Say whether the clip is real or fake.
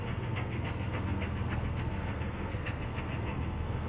fake